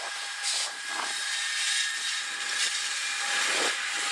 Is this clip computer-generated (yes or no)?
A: no